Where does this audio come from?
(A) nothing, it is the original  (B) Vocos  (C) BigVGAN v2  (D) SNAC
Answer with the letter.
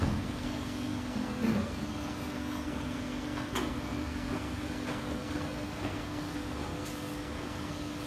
D